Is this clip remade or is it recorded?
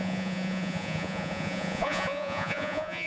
remade